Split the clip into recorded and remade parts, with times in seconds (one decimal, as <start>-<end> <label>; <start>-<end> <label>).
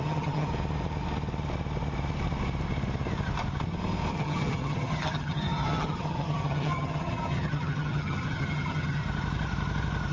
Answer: 0.0-0.5 remade; 0.5-4.1 recorded; 4.1-9.0 remade; 9.0-10.1 recorded